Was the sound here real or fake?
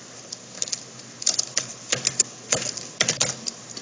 real